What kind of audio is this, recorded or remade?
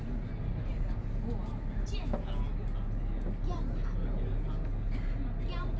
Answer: recorded